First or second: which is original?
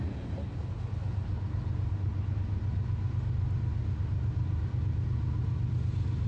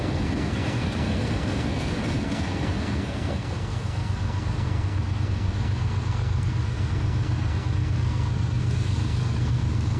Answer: first